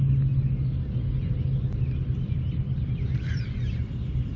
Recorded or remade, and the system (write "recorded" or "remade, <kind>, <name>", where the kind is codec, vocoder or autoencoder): recorded